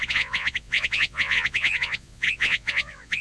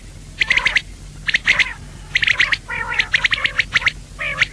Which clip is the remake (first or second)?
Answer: first